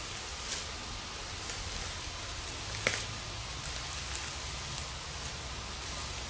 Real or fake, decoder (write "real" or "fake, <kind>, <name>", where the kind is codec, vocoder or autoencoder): real